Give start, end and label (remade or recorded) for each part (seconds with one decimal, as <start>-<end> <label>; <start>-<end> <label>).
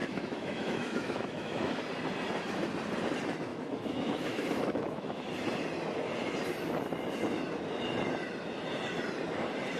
0.0-1.8 remade; 1.8-3.5 recorded; 3.5-5.2 remade; 5.2-9.8 recorded